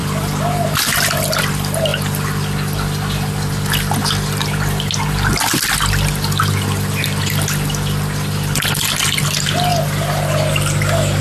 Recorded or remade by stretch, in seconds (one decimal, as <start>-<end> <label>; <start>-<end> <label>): 0.0-11.2 recorded